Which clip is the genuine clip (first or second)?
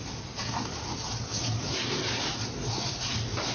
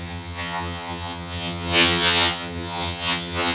first